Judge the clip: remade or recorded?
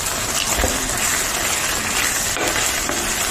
recorded